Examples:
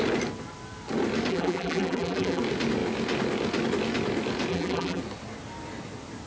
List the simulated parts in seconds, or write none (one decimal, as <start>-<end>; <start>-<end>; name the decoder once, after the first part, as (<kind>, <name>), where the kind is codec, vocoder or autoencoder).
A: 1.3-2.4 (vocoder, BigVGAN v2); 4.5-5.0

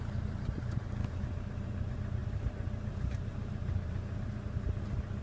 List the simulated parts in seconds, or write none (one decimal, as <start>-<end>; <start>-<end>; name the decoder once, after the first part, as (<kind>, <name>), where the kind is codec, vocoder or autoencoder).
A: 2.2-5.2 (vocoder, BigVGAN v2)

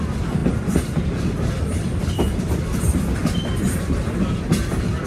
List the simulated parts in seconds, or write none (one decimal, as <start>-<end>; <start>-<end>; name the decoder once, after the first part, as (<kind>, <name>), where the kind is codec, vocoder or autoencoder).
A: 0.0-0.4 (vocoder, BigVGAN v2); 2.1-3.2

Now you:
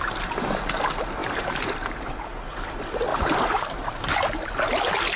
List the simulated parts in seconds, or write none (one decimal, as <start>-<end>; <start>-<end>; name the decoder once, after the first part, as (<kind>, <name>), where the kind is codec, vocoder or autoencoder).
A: 1.2-2.6 (vocoder, BigVGAN v2); 3.1-3.9